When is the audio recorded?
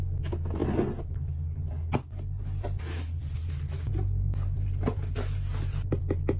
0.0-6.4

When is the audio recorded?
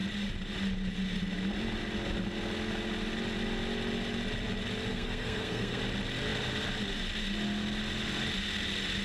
0.0-4.9; 5.8-9.0